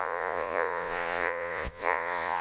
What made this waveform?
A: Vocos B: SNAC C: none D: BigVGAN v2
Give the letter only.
A